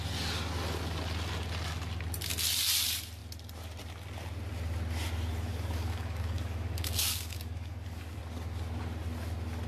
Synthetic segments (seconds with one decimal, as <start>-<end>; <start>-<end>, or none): 5.5-8.2